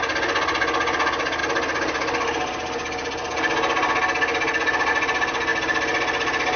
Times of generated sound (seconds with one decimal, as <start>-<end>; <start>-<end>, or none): none